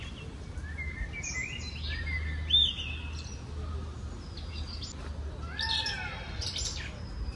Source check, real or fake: real